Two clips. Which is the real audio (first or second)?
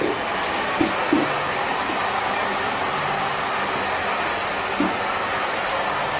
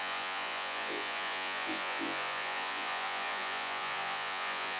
first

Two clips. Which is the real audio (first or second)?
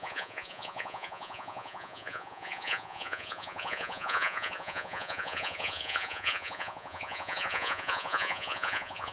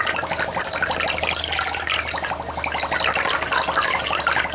second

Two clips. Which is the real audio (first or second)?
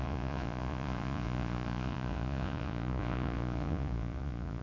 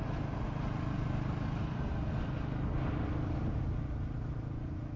second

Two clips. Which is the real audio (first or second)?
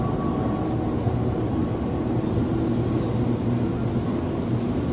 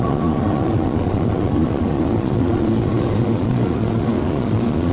first